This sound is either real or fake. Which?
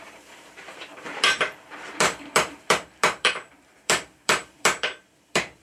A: fake